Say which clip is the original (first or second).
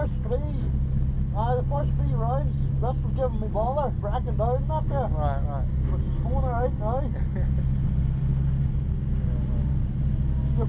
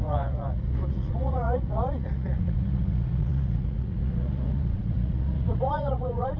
first